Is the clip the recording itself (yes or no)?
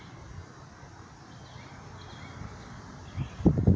yes